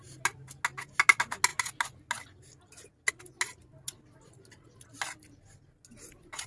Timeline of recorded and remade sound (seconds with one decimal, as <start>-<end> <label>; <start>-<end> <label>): 0.0-6.5 recorded